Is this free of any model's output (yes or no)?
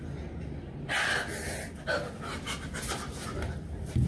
yes